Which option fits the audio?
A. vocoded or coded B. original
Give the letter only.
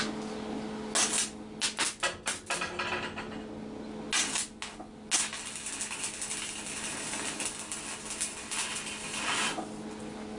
B